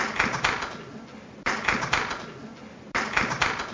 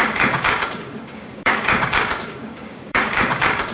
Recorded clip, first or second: first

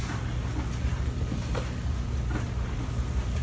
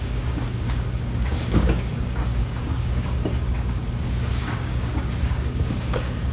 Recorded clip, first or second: first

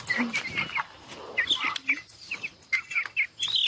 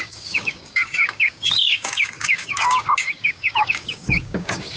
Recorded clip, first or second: first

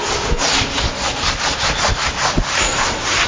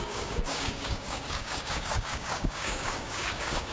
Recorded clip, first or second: first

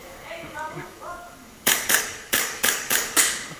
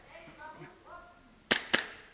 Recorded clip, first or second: second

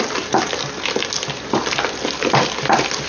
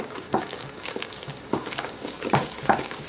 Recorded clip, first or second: first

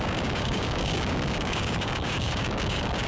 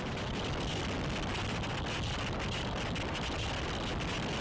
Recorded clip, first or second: second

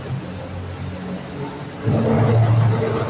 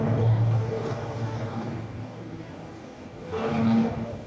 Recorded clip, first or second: first